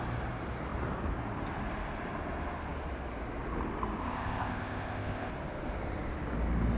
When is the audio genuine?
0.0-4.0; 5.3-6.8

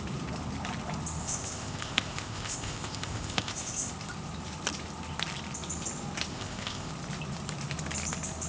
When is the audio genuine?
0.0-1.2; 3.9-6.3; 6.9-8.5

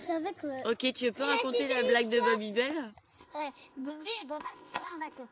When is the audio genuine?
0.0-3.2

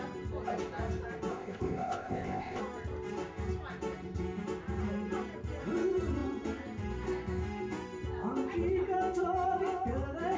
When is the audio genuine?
0.0-1.3; 2.6-10.4

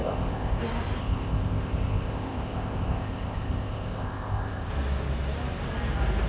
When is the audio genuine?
0.6-1.0; 4.7-6.3

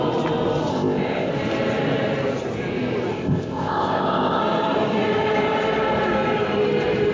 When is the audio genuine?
0.0-0.7; 1.3-3.1; 4.4-7.1